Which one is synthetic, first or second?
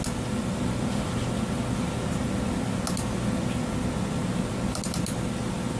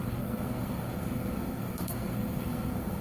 second